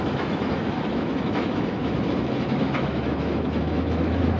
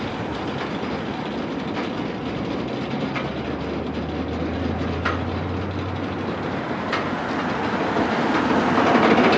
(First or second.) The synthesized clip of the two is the first